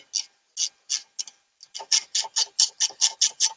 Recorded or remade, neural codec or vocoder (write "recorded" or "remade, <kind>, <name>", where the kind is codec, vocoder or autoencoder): recorded